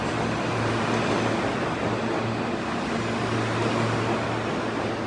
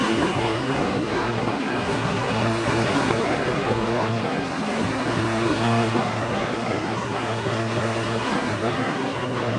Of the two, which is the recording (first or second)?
first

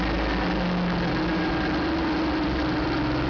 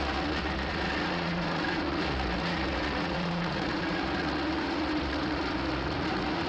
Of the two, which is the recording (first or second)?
first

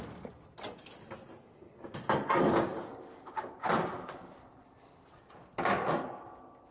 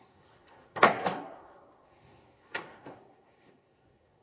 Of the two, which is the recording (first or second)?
first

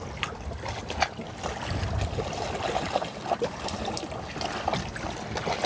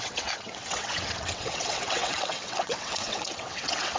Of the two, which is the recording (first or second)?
first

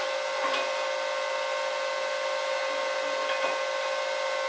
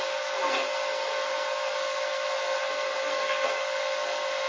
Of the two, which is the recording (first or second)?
first